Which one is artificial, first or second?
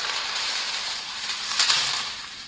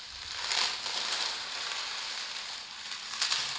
first